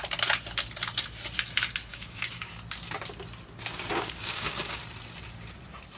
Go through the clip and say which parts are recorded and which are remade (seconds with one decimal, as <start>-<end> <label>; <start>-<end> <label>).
0.0-1.9 recorded; 1.9-2.5 remade; 2.5-3.9 recorded; 3.9-4.8 remade; 4.8-6.0 recorded

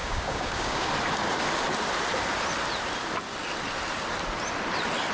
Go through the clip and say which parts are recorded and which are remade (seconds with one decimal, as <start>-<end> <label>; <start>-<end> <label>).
0.0-0.9 remade; 0.9-5.1 recorded

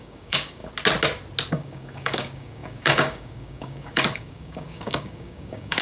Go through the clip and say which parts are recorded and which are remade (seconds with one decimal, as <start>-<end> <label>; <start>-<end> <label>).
0.0-0.6 remade; 0.6-1.5 recorded; 1.5-5.8 remade

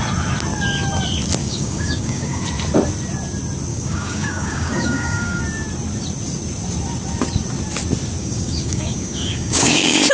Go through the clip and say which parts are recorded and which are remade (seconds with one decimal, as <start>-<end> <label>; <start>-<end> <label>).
0.0-1.4 recorded; 1.4-2.4 remade; 2.4-3.7 recorded; 3.7-5.4 remade; 5.4-8.2 recorded; 8.2-10.1 remade

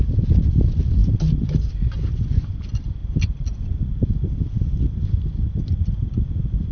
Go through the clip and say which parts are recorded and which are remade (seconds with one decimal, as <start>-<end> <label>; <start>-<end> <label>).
0.0-6.7 recorded

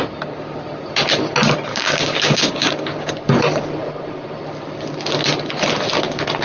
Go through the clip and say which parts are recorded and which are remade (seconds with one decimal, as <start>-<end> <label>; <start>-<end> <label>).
0.0-1.7 recorded; 1.7-3.1 remade; 3.1-6.4 recorded